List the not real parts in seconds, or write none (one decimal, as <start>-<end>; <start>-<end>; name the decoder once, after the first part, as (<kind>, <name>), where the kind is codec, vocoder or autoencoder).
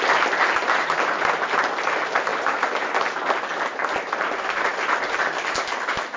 none